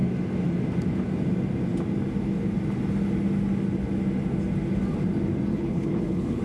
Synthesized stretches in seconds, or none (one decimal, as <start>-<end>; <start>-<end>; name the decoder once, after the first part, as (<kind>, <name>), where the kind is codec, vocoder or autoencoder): 5.5-6.4 (codec, HILCodec)

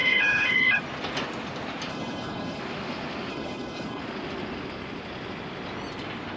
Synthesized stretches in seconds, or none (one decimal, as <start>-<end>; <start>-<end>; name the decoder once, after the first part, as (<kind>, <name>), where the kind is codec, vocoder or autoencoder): 0.0-0.8 (codec, HILCodec); 1.9-2.6; 3.3-4.0

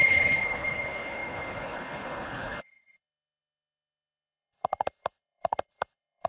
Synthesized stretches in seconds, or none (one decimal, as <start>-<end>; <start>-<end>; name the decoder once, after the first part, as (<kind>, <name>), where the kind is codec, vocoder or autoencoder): 0.0-6.3 (codec, HILCodec)

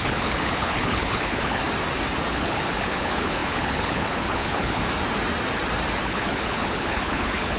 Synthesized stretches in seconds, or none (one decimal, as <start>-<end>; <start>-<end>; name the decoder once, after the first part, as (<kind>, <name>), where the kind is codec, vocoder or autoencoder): 0.0-1.6 (codec, HILCodec); 2.3-4.8; 6.0-7.6